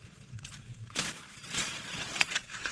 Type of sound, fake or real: fake